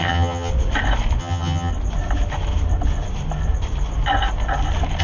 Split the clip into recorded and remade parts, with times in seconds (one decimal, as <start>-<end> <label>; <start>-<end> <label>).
0.0-0.5 remade; 0.5-1.2 recorded; 1.2-1.7 remade; 1.7-5.0 recorded